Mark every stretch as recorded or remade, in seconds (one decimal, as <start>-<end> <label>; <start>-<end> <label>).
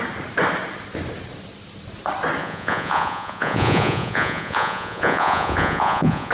0.0-2.4 recorded; 2.4-6.3 remade